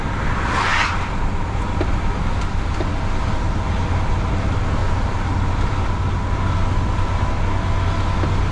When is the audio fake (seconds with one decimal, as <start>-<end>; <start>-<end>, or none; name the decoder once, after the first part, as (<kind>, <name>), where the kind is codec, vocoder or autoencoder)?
none